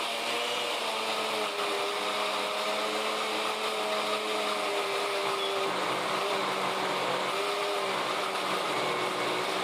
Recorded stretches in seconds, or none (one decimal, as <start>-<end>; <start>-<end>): 0.0-9.6